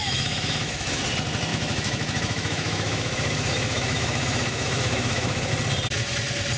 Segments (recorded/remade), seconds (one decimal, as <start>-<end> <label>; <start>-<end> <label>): 0.0-1.0 remade; 1.0-1.5 recorded; 1.5-5.5 remade; 5.5-6.6 recorded